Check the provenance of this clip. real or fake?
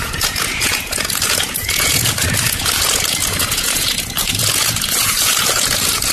fake